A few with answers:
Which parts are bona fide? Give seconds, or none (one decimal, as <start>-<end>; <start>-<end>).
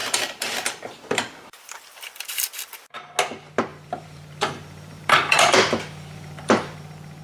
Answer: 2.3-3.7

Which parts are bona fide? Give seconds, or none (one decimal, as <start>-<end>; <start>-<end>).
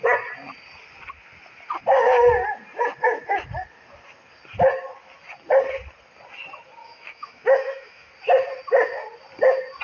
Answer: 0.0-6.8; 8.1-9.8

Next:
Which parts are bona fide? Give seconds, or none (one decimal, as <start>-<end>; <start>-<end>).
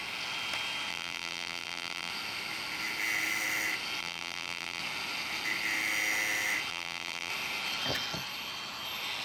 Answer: 0.0-0.9; 2.1-4.0; 4.8-6.7; 7.3-9.2